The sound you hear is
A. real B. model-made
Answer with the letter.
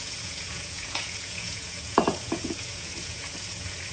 B